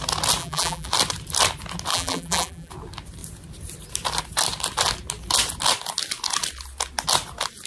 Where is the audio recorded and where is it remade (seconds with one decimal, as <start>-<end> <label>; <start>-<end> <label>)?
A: 0.0-0.4 recorded; 0.4-0.9 remade; 0.9-1.9 recorded; 1.9-2.7 remade; 2.7-7.7 recorded